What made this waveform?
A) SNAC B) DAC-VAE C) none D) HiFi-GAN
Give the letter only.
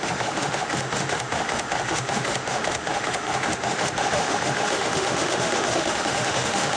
B